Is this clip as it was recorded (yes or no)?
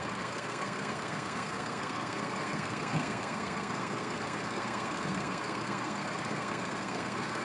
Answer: no